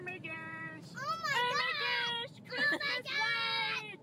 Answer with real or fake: fake